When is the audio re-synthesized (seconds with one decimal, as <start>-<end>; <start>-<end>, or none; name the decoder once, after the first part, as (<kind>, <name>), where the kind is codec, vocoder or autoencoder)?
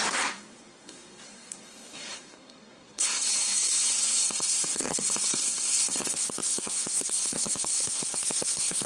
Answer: 0.0-8.9 (codec, SNAC)